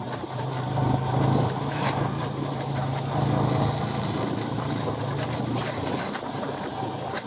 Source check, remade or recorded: remade